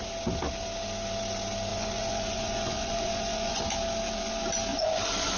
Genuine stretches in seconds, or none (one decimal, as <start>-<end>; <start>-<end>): 0.0-1.7; 3.6-4.7